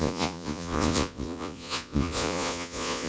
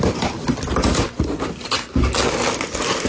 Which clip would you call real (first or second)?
second